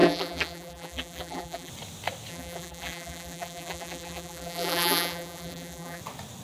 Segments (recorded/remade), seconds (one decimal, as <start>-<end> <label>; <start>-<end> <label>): 0.0-1.7 remade; 1.7-2.3 recorded; 2.3-6.0 remade; 6.0-6.4 recorded